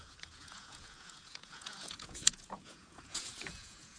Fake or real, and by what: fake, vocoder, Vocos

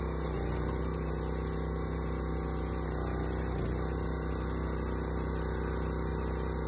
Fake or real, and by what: real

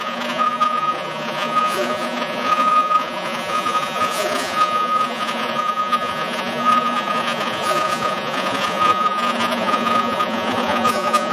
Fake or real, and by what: fake, vocoder, Vocos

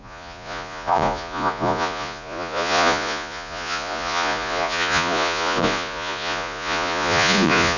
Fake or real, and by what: fake, vocoder, Vocos